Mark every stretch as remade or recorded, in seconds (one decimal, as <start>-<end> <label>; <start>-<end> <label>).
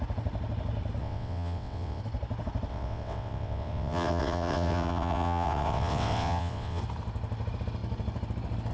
0.0-1.0 recorded; 1.0-2.0 remade; 2.0-2.7 recorded; 2.7-6.8 remade; 6.8-8.7 recorded